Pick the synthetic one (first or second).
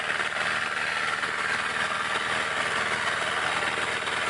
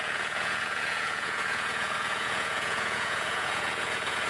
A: second